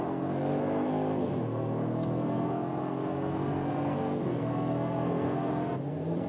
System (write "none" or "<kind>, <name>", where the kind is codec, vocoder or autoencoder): codec, SNAC